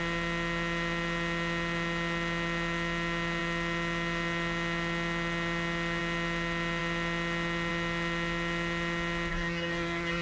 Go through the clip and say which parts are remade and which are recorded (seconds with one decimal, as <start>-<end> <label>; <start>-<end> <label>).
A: 0.0-9.3 recorded; 9.3-10.2 remade